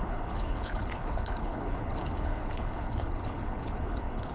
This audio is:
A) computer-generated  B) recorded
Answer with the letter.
A